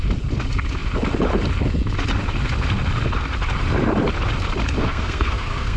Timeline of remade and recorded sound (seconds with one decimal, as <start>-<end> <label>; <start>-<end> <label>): 0.0-4.8 recorded; 4.8-5.8 remade